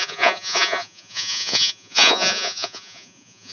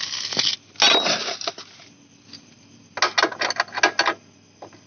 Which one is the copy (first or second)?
first